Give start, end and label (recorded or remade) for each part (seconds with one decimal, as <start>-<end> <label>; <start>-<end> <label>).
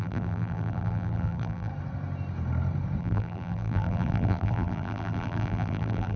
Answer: 0.0-1.7 remade; 1.7-3.0 recorded; 3.0-6.2 remade